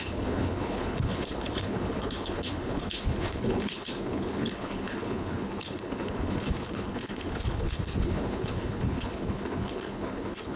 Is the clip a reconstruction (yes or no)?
yes